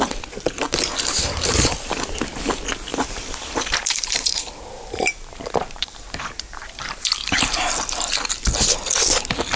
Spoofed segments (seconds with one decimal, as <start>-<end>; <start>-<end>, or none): 2.9-7.5